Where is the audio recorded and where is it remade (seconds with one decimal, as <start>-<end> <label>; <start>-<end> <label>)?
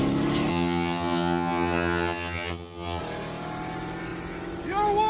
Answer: 0.0-0.5 recorded; 0.5-3.0 remade; 3.0-5.1 recorded